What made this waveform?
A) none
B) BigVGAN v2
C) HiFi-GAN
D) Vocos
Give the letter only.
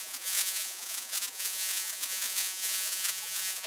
D